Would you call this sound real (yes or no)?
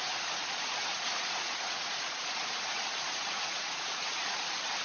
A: no